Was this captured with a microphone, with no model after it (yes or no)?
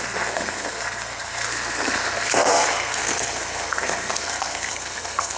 no